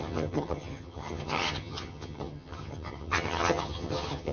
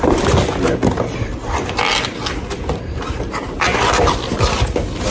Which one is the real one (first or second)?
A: second